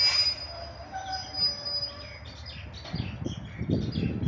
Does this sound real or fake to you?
real